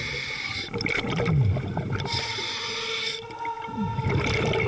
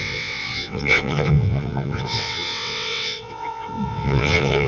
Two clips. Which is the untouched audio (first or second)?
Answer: first